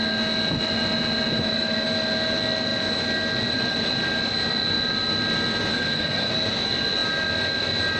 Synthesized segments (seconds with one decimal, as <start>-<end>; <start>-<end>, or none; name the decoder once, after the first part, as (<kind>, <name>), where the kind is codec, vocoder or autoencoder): 5.7-6.3 (codec, SNAC)

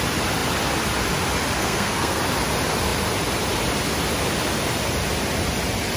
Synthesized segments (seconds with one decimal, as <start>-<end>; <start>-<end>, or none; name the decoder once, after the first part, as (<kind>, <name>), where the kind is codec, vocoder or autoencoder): 1.6-2.2 (codec, SNAC)

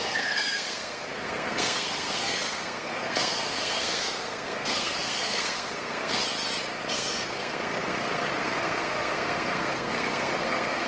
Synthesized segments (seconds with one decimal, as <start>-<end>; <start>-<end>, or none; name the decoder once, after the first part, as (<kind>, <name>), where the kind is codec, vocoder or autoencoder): 0.0-6.2 (codec, SNAC); 6.9-10.9

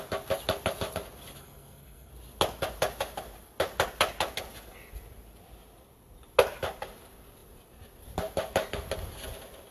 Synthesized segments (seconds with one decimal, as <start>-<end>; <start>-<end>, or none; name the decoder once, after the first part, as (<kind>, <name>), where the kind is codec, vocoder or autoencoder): 1.4-2.1 (codec, SNAC)

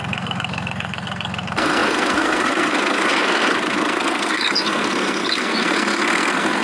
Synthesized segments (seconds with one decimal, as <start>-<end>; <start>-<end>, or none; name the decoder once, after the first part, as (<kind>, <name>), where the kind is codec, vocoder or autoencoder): 0.0-6.6 (codec, SNAC)

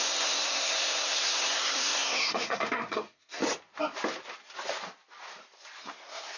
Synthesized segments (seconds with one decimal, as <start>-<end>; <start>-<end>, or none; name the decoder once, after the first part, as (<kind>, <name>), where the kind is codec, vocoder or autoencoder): 0.0-3.4 (codec, SNAC); 5.8-6.4

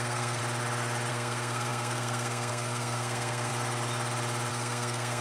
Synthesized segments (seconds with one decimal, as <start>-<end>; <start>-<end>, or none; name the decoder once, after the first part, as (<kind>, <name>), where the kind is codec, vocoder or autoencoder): 0.0-0.4 (codec, SNAC); 1.1-3.5; 4.5-5.2